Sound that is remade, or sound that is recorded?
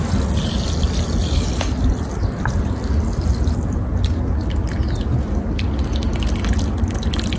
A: recorded